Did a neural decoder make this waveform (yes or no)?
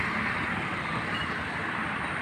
no